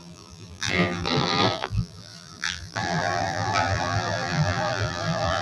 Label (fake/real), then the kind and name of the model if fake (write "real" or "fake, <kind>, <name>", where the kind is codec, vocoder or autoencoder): fake, vocoder, BigVGAN v2